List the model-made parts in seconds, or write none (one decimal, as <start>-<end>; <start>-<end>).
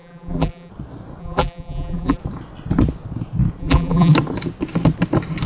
0.0-0.7; 1.2-2.2; 3.6-4.1